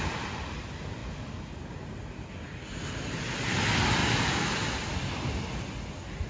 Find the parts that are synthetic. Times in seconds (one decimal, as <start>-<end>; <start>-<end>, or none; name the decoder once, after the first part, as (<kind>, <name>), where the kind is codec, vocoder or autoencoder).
none